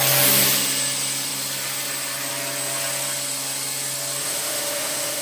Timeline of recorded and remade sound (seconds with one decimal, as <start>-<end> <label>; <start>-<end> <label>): 0.0-4.2 recorded; 4.2-5.2 remade